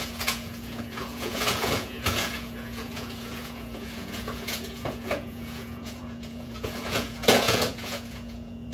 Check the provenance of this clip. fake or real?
fake